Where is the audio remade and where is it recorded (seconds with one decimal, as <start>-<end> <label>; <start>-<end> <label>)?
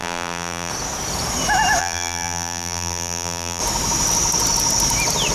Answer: 0.0-0.7 remade; 0.7-1.8 recorded; 1.8-3.6 remade; 3.6-5.3 recorded